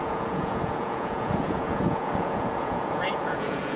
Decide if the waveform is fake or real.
fake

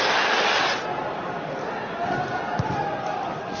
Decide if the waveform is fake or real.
real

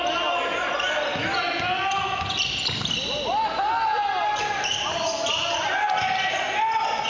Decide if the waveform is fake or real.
real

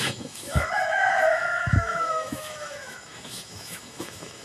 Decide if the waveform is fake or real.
fake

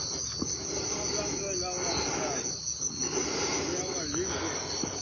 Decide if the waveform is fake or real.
real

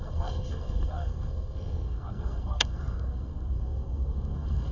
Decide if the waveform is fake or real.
fake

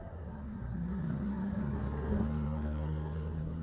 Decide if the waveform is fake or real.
fake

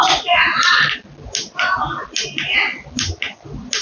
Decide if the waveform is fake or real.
real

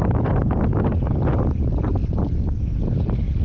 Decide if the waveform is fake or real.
real